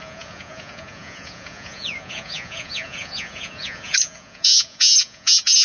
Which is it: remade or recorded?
remade